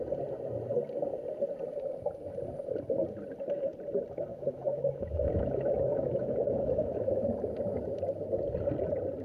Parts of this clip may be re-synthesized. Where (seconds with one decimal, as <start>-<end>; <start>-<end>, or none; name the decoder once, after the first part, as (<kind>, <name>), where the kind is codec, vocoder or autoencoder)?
4.3-7.3 (autoencoder, DAC-VAE)